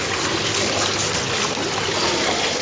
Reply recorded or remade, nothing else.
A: recorded